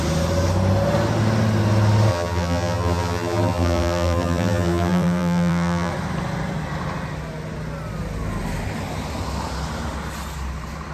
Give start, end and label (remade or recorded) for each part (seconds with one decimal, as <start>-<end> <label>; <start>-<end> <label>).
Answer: 0.0-2.1 recorded; 2.1-5.9 remade; 5.9-10.9 recorded